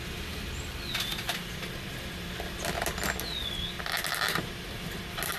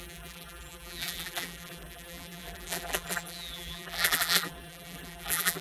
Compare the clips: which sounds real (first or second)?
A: first